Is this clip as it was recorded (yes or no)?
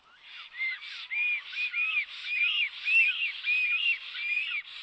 yes